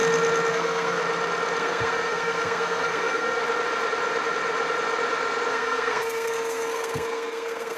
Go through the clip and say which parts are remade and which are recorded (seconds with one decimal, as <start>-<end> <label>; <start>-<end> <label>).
0.0-0.5 recorded; 0.5-1.0 remade; 1.0-1.6 recorded; 1.6-3.4 remade; 3.4-5.5 recorded; 5.5-7.8 remade